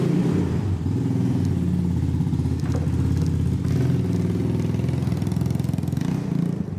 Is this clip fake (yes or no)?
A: no